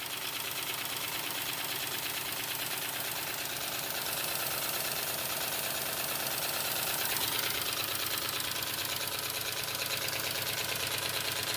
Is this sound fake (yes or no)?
no